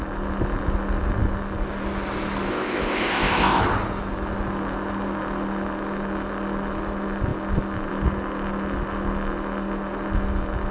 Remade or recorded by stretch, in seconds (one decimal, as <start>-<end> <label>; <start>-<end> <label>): 0.0-2.5 recorded; 2.5-3.6 remade; 3.6-10.7 recorded